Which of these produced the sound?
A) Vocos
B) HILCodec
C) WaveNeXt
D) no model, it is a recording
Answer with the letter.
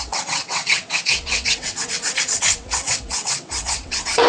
C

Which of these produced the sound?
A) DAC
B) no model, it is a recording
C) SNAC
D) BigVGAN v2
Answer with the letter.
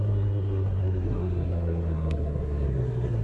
C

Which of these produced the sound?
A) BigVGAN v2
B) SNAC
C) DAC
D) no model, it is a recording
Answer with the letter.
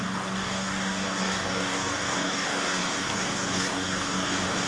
C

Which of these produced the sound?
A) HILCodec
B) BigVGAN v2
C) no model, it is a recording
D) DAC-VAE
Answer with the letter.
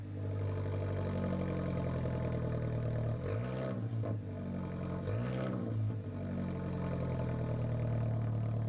C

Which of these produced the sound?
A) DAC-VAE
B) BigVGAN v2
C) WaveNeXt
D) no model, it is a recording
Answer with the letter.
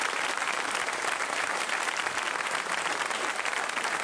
B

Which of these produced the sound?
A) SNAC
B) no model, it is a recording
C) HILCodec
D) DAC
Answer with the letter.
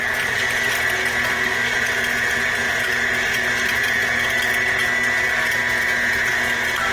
B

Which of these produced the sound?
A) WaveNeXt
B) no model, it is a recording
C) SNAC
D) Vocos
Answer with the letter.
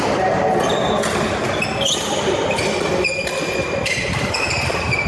B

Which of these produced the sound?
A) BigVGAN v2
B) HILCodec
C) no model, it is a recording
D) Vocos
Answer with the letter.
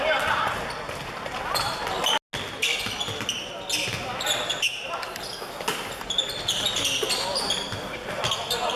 C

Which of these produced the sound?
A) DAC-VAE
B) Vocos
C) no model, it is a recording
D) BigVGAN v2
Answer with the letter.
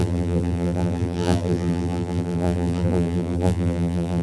D